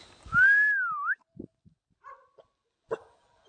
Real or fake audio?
real